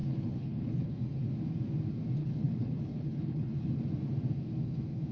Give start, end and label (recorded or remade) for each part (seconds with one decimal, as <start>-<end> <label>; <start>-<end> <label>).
0.0-0.9 remade; 0.9-2.2 recorded; 2.2-3.8 remade; 3.8-5.1 recorded